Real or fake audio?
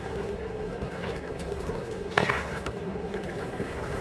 fake